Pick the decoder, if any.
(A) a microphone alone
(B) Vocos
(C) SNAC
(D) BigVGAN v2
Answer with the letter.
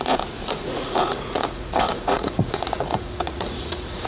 B